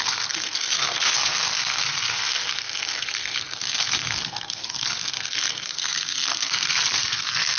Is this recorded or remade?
remade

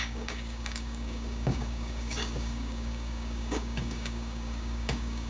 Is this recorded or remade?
remade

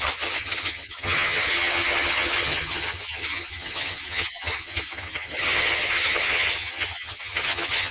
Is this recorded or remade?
remade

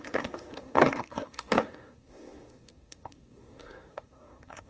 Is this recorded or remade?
remade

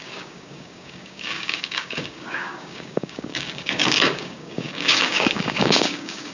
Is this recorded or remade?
remade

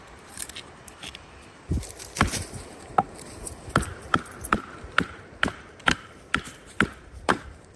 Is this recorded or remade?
remade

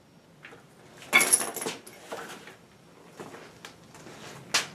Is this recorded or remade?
recorded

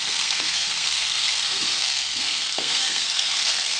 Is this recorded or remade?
remade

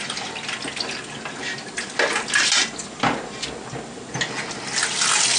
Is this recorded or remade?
recorded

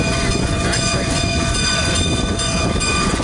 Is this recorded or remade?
remade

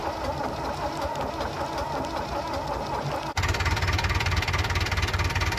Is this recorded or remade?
recorded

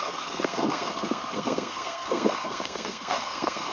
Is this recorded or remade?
remade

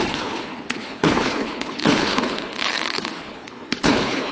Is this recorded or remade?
remade